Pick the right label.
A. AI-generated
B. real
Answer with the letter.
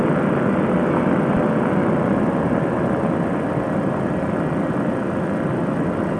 B